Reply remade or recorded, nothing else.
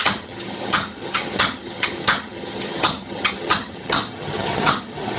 remade